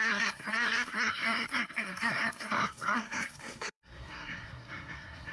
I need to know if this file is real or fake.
fake